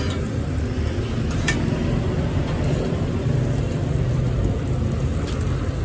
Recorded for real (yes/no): yes